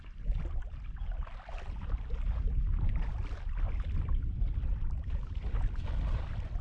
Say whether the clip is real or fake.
real